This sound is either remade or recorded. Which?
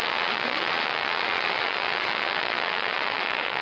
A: remade